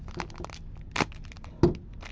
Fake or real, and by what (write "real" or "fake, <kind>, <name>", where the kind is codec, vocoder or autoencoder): real